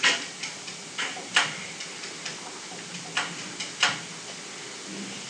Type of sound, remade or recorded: recorded